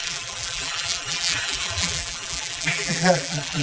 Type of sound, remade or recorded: remade